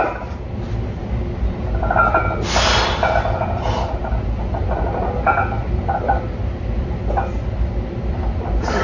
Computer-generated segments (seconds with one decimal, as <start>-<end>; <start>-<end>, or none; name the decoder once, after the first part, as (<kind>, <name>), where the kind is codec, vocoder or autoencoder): 0.0-8.8 (vocoder, BigVGAN v2)